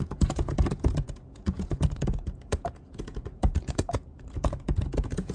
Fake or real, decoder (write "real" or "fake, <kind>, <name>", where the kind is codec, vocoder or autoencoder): fake, vocoder, Vocos